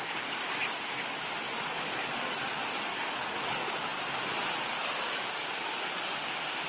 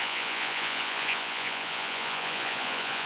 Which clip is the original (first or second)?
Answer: first